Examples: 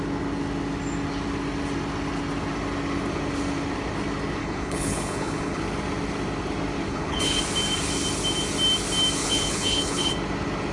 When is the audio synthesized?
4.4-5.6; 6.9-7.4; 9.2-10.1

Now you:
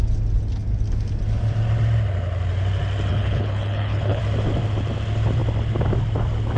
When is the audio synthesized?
3.1-4.2